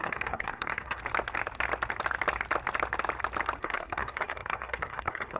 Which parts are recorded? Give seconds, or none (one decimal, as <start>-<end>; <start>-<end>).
1.0-3.6